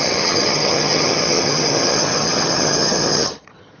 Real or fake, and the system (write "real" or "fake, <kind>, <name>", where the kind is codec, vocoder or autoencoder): fake, vocoder, HiFi-GAN